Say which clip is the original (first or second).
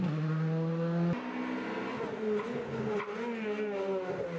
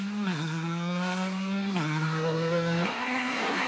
first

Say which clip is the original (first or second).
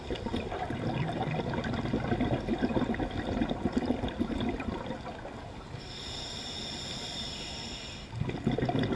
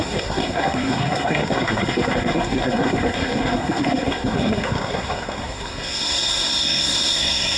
first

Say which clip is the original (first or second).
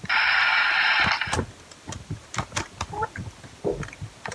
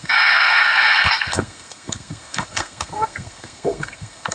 first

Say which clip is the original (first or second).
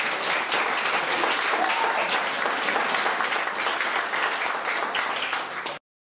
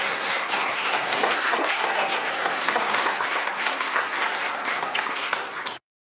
first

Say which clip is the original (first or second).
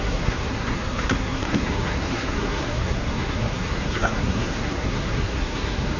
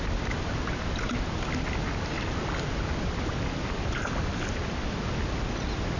second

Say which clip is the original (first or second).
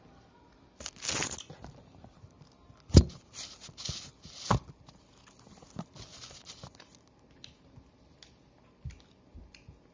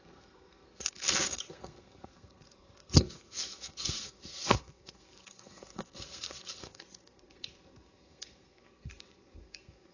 first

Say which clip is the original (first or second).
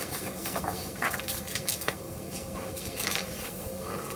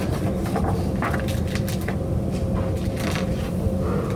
second